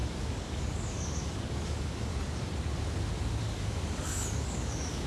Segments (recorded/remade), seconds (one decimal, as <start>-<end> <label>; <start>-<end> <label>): 0.0-2.1 remade; 2.1-3.4 recorded; 3.4-5.1 remade